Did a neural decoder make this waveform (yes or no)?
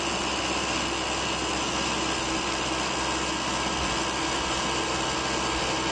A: no